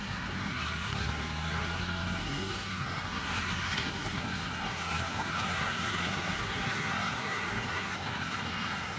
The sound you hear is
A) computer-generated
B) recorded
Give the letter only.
A